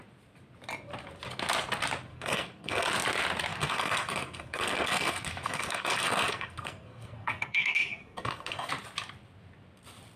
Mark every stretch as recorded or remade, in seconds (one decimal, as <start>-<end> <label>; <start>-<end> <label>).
0.0-2.1 recorded; 2.1-2.9 remade; 2.9-3.5 recorded; 3.5-8.7 remade; 8.7-10.2 recorded